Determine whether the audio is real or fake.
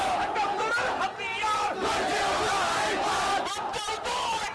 real